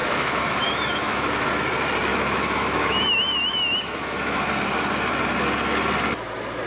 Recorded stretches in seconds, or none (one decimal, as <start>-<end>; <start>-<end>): 1.5-2.1; 4.5-6.7